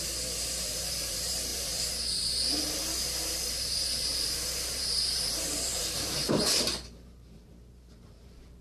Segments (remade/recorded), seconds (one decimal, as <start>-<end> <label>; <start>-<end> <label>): 0.0-8.6 remade